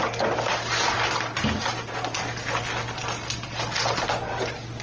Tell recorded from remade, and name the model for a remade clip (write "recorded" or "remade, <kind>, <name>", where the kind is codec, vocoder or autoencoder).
recorded